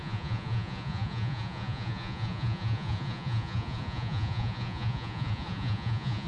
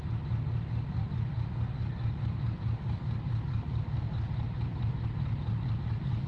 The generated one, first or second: first